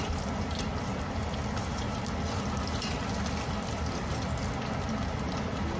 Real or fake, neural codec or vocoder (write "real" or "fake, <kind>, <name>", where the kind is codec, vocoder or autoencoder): real